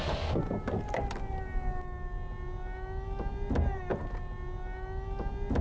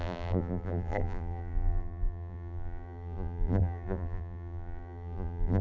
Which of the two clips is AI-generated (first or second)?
second